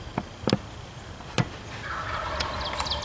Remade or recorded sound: recorded